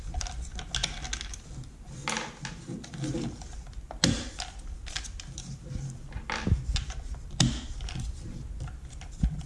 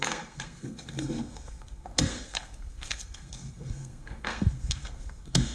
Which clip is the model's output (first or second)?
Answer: second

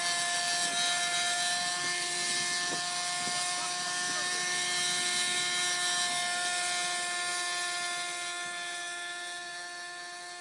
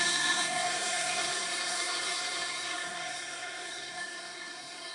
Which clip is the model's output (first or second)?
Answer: second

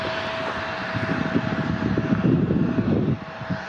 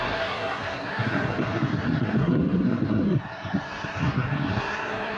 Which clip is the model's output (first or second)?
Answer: second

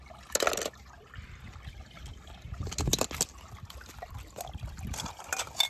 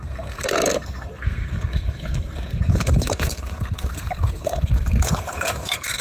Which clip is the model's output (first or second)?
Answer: second